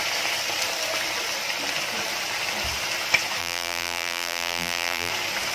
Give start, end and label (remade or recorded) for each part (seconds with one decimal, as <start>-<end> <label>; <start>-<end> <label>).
0.0-3.4 recorded; 3.4-5.1 remade; 5.1-5.5 recorded